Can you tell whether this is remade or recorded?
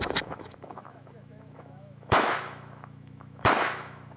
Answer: remade